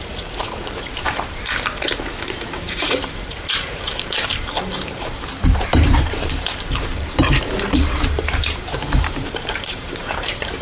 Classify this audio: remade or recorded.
remade